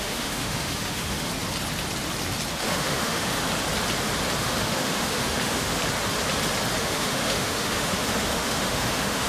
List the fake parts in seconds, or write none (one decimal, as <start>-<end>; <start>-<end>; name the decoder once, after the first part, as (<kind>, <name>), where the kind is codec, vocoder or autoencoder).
0.0-1.3 (autoencoder, DAC-VAE); 2.5-3.3; 4.4-5.8; 6.8-9.3